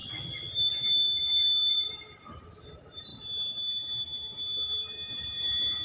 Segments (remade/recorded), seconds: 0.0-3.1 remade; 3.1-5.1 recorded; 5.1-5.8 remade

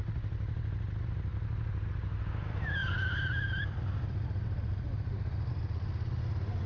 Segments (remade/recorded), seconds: 0.0-6.7 recorded